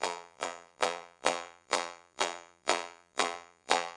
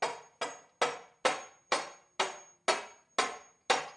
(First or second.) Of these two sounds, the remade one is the first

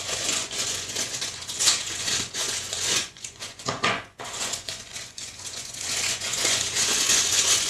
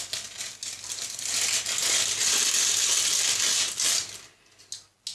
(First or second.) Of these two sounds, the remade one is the first